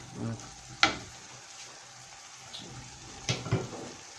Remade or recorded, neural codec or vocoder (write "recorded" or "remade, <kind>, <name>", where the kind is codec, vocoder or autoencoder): recorded